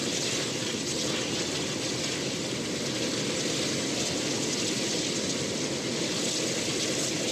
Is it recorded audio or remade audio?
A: recorded